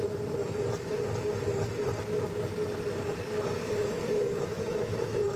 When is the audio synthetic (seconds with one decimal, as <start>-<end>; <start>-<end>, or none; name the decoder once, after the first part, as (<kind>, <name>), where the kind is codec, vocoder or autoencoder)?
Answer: 3.6-5.4 (autoencoder, DAC-VAE)